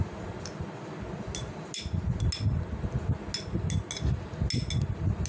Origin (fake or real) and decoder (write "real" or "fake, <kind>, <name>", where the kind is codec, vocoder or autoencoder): real